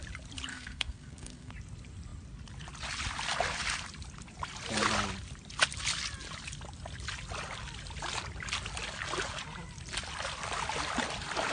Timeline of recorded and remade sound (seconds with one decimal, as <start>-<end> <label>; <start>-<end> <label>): 0.0-0.5 recorded; 0.5-1.5 remade; 1.5-11.5 recorded